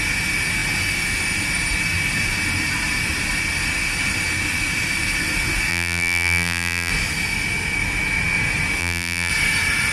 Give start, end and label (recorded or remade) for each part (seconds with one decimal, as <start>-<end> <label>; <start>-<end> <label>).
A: 0.0-5.7 recorded; 5.7-6.9 remade; 6.9-8.8 recorded; 8.8-9.3 remade; 9.3-9.9 recorded